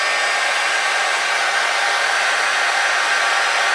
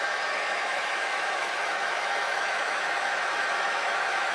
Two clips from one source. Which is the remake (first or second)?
second